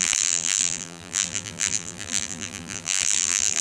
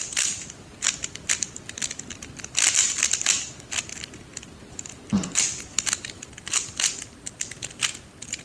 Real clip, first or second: second